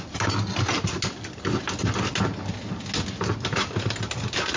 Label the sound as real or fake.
real